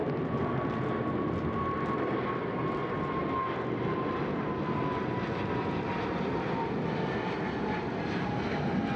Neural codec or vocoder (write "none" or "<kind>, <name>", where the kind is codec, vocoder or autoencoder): none